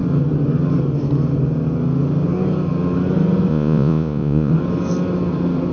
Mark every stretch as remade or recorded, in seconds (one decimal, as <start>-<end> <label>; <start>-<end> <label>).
0.0-3.5 recorded; 3.5-4.5 remade; 4.5-5.7 recorded